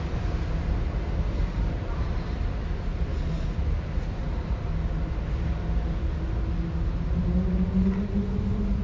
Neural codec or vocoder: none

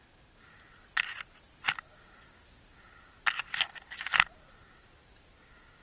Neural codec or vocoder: none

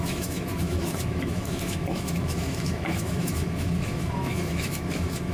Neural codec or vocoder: autoencoder, DAC-VAE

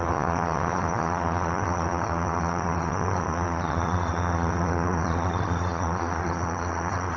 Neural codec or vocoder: vocoder, Vocos